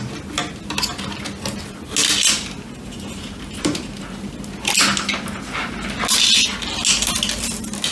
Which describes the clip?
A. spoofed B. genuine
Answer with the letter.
B